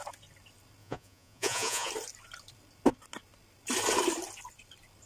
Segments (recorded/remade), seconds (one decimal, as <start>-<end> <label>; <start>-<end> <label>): 0.0-0.8 recorded; 0.8-1.9 remade; 1.9-5.1 recorded